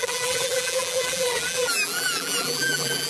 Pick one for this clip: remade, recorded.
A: remade